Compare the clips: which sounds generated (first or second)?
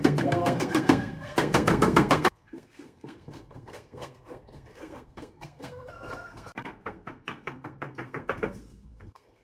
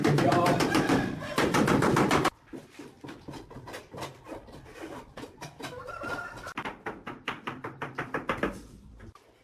first